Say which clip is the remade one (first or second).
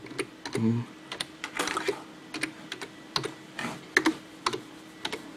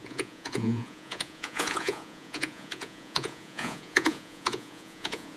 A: second